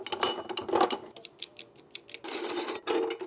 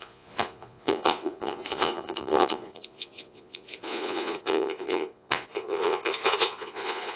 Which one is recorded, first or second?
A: first